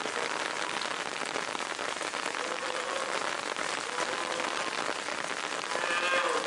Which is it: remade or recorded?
recorded